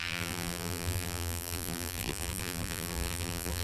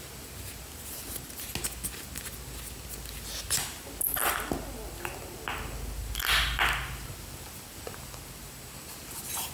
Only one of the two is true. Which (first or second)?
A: second